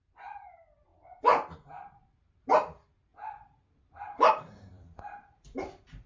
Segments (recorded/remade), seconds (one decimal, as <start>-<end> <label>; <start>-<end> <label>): 0.0-3.1 recorded; 3.1-4.3 remade; 4.3-4.7 recorded; 4.7-6.1 remade